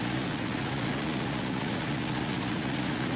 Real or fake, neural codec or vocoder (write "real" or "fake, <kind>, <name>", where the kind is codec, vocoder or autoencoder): fake, vocoder, Vocos